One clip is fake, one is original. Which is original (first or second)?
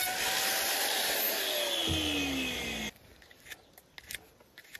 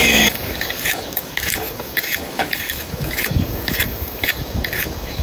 first